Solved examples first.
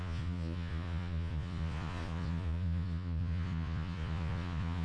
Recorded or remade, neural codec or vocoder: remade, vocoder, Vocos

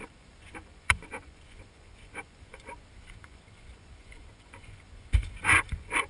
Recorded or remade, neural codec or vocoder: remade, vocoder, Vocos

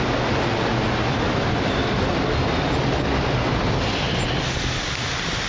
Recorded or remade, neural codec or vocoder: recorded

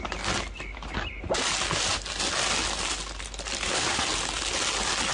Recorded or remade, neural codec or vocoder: recorded